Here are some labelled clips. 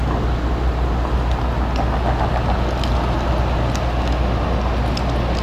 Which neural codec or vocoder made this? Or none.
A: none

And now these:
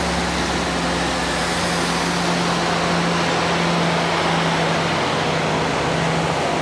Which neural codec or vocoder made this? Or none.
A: none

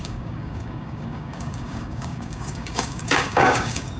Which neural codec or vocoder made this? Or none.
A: codec, DAC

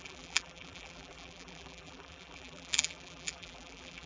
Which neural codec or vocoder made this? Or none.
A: vocoder, BigVGAN v2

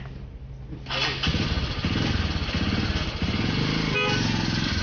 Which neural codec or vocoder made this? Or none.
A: none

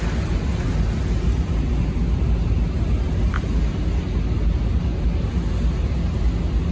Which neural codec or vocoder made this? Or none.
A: none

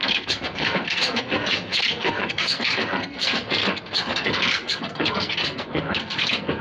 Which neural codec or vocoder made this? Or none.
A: codec, SNAC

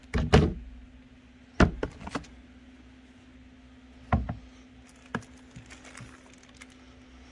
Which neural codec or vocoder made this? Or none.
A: none